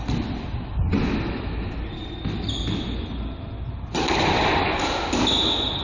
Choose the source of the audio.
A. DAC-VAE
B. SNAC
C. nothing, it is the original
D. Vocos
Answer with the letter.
C